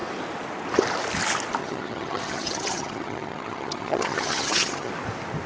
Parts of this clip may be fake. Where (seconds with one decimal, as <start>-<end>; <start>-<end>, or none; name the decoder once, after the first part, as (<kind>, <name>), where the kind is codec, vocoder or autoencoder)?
1.6-4.9 (vocoder, HiFi-GAN)

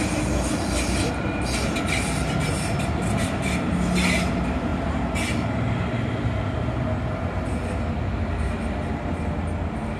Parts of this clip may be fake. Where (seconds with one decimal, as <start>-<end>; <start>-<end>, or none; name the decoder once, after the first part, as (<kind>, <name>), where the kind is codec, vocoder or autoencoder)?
none

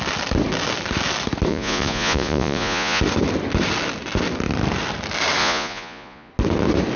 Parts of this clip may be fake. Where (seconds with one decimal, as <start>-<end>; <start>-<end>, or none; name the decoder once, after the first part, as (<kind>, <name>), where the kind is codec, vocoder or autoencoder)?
1.5-3.0 (vocoder, Vocos); 5.4-6.3

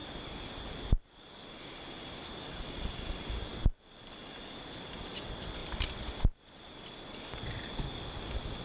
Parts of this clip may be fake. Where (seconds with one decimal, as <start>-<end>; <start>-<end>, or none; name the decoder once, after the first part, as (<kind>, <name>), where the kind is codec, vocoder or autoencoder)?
none

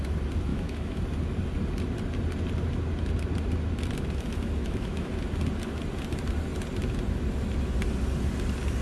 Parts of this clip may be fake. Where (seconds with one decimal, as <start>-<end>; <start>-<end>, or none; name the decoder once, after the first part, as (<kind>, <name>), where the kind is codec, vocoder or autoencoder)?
0.5-1.0 (autoencoder, DAC-VAE); 4.6-5.1

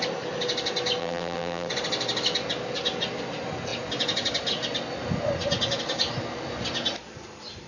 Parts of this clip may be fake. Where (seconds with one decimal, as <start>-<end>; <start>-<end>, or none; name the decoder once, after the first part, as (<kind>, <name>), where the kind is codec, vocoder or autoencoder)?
1.0-1.7 (vocoder, BigVGAN v2)